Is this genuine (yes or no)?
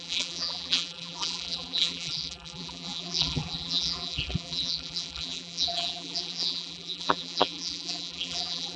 no